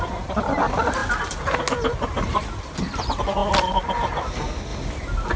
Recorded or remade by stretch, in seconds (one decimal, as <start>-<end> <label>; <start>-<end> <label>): 0.0-5.4 recorded